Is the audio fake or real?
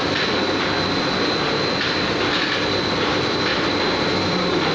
real